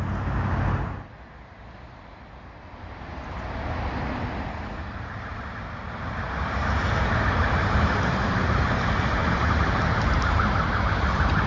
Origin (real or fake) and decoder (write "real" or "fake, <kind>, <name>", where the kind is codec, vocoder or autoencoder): real